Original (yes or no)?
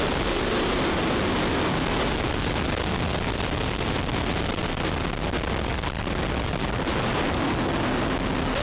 yes